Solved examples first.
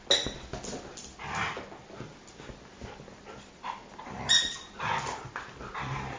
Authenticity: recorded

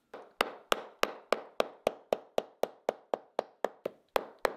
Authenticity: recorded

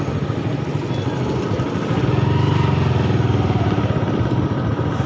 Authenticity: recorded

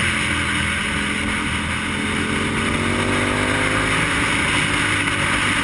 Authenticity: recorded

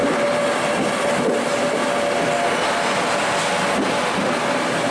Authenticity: recorded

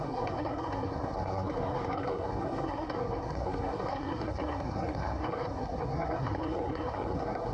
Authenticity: remade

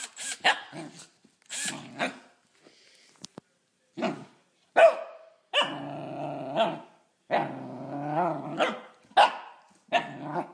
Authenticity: recorded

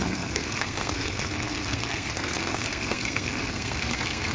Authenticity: remade